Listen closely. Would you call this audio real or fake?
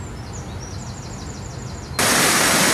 real